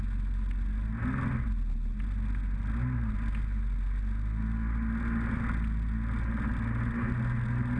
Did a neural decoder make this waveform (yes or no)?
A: no